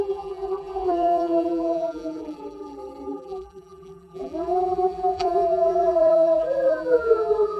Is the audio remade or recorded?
remade